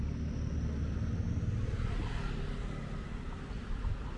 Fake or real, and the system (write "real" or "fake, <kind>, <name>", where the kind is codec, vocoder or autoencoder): real